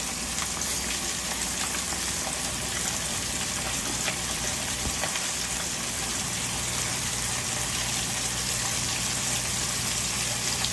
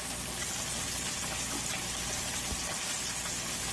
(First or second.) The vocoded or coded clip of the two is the first